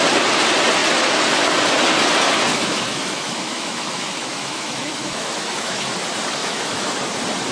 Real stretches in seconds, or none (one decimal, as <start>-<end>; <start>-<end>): 0.0-2.5; 5.9-6.4; 6.9-7.5